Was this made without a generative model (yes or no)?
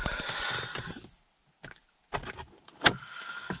yes